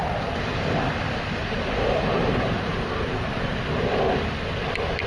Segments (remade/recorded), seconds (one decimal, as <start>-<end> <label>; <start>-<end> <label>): 0.0-1.4 recorded; 1.4-3.4 remade; 3.4-5.1 recorded